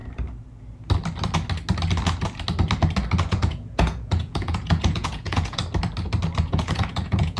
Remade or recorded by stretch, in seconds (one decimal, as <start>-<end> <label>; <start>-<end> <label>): 0.0-3.3 recorded; 3.3-5.6 remade; 5.6-6.4 recorded; 6.4-7.4 remade

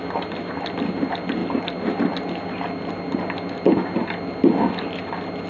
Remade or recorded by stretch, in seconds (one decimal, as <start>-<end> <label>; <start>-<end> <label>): 0.0-5.5 recorded

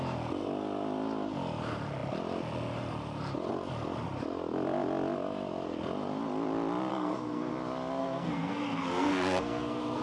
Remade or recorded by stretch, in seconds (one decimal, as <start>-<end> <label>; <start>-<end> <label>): 0.0-6.9 recorded; 6.9-7.5 remade; 7.5-8.0 recorded; 8.0-10.0 remade

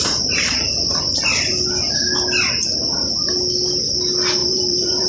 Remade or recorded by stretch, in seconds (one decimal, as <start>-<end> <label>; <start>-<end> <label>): 0.0-4.4 recorded; 4.4-5.1 remade

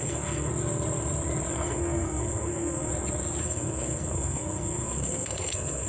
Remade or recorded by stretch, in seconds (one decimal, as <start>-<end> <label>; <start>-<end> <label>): 0.0-0.5 remade; 0.5-1.5 recorded; 1.5-2.9 remade; 2.9-3.4 recorded; 3.4-5.9 remade

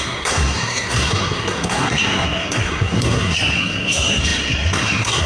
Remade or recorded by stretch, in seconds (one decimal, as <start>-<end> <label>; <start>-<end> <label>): 0.0-5.3 remade